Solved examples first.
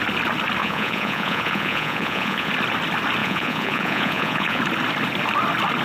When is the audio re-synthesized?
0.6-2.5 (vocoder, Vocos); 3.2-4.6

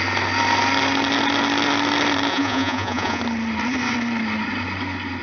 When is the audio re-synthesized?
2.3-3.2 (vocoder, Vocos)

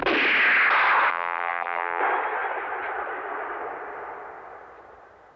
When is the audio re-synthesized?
1.1-2.0 (vocoder, BigVGAN v2)

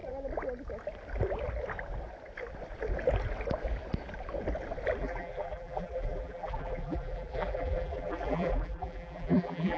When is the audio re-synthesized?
5.0-9.8 (vocoder, BigVGAN v2)